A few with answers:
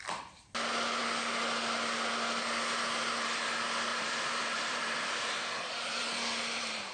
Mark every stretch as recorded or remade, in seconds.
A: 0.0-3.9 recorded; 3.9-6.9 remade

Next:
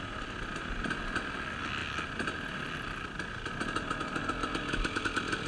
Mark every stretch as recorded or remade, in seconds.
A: 0.0-5.5 recorded

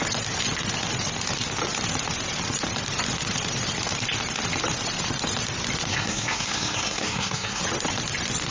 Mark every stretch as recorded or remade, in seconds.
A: 0.0-5.9 recorded; 5.9-7.6 remade; 7.6-8.5 recorded